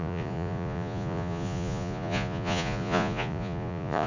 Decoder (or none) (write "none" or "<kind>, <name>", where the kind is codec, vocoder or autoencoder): vocoder, Vocos